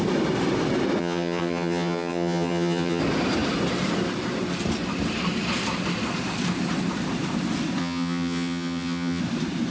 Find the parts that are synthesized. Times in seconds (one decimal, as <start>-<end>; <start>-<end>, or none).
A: 1.0-3.0; 7.8-9.2